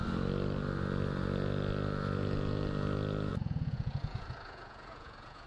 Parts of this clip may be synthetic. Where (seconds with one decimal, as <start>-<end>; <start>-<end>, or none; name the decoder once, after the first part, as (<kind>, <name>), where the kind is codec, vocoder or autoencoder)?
3.3-5.5 (vocoder, Vocos)